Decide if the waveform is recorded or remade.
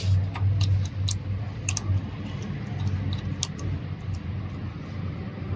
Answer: recorded